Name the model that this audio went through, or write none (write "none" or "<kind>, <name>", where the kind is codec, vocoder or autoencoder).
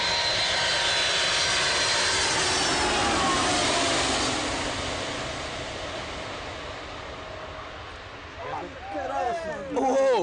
none